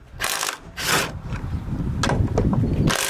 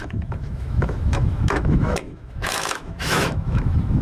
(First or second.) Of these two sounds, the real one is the first